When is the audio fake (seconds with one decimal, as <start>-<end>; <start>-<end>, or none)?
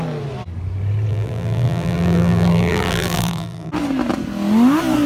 1.1-3.7